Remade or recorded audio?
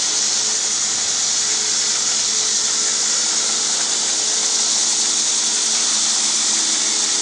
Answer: recorded